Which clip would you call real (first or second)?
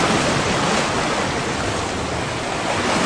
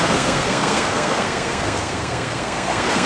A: first